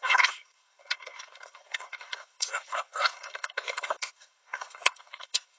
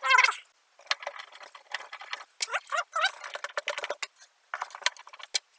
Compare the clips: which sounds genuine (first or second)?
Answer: second